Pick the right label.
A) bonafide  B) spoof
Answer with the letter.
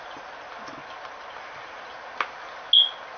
A